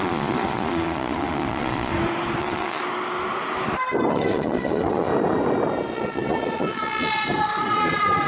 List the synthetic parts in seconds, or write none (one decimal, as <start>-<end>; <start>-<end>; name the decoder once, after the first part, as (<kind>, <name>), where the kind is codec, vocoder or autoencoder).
0.0-1.9 (vocoder, Vocos); 2.4-2.8; 4.1-5.1; 5.9-8.3